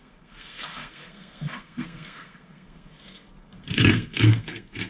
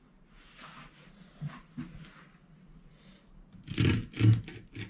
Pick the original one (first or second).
second